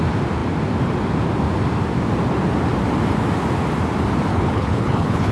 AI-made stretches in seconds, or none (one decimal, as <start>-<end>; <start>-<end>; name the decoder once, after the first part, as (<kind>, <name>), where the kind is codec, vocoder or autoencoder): 4.3-5.3 (codec, HILCodec)